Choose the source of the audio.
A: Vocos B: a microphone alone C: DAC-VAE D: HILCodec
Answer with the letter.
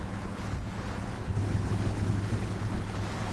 D